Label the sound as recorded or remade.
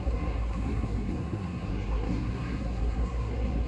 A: remade